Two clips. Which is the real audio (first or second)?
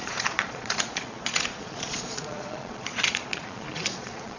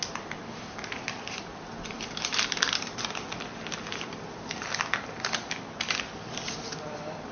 second